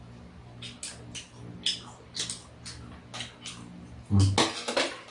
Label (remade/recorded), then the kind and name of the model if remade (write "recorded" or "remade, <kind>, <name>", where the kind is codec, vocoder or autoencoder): recorded